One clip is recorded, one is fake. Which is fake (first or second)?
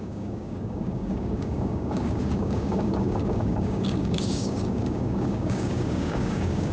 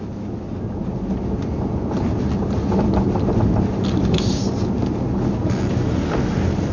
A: first